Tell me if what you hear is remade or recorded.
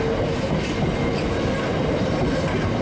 recorded